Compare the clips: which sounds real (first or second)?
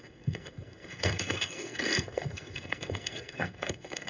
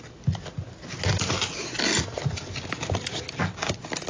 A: second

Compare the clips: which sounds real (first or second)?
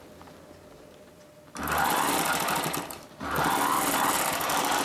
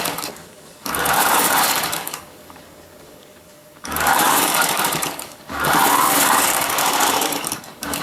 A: first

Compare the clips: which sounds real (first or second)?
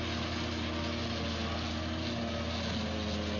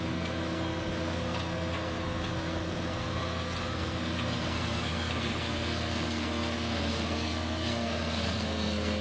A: first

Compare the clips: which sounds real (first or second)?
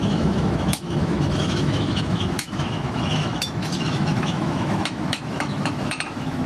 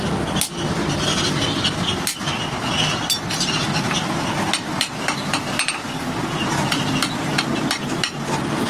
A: second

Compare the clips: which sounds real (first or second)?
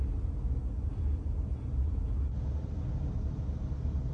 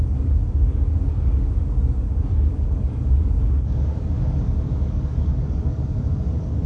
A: first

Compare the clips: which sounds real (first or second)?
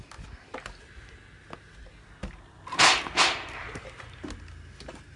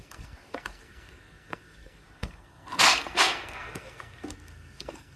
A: first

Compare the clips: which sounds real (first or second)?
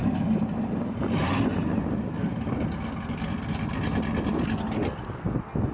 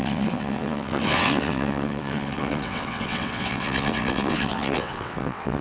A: first